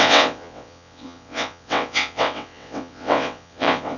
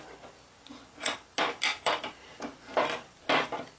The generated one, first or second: first